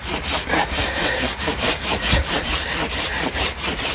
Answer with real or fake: fake